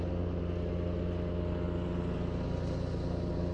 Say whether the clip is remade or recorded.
recorded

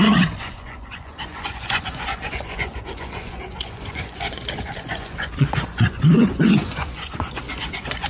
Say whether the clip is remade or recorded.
remade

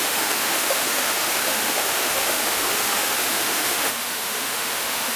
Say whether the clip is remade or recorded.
remade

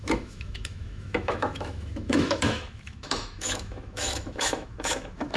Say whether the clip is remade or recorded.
remade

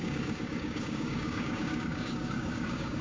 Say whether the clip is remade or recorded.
remade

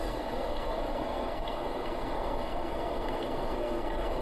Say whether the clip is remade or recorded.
remade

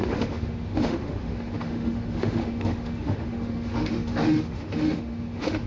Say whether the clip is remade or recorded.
remade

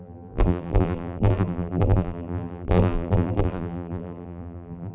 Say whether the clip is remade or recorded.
remade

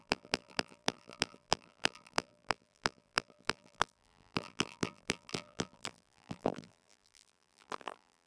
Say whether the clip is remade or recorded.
remade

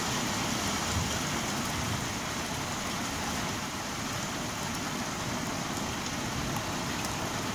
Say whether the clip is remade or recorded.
recorded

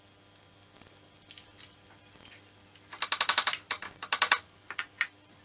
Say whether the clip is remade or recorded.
recorded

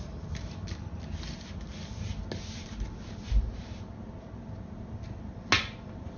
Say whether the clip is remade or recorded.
recorded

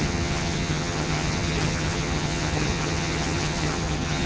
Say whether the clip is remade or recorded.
remade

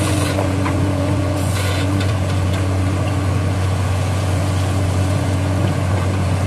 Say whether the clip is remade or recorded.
remade